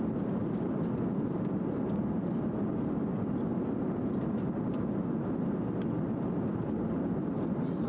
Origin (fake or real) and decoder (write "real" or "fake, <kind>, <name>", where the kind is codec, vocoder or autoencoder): real